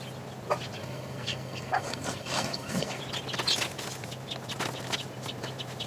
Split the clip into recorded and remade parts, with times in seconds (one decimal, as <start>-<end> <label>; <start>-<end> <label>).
0.0-0.8 recorded; 0.8-3.0 remade; 3.0-5.9 recorded